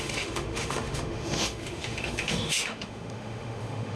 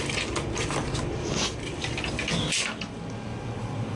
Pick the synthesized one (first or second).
first